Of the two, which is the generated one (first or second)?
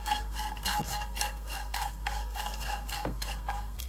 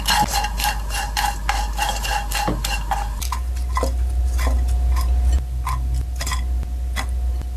first